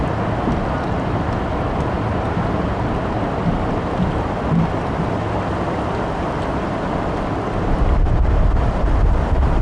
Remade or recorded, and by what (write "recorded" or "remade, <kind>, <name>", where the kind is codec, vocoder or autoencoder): recorded